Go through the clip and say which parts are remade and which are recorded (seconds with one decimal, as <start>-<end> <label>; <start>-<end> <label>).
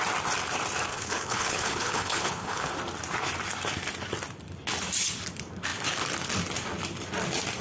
0.0-0.9 recorded; 0.9-2.7 remade; 2.7-7.6 recorded